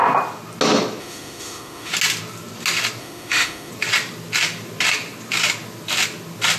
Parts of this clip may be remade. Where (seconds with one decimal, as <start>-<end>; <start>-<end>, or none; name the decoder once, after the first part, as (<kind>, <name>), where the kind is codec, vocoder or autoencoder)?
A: 1.0-1.9 (autoencoder, DAC-VAE); 3.0-3.7